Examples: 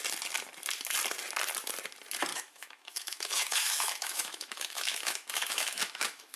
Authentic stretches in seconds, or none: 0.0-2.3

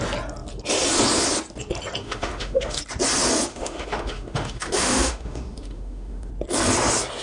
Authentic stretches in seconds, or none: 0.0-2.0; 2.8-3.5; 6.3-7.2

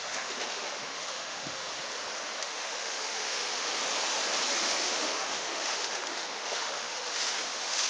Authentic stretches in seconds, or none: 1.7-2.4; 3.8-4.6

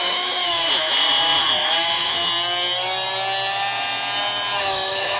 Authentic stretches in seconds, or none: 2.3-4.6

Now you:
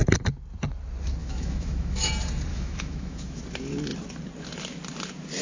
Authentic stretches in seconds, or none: 0.0-1.2; 2.1-2.5; 3.4-5.4

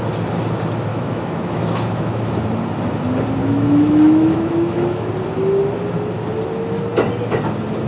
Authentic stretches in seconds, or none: 0.0-0.9; 2.3-3.4; 5.1-7.9

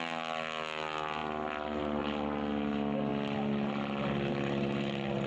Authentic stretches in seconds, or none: 0.0-5.3